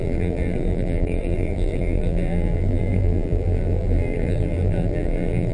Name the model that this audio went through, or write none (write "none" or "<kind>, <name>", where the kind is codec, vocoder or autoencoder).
vocoder, BigVGAN v2